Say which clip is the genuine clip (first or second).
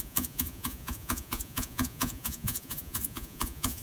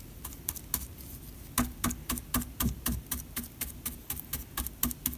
second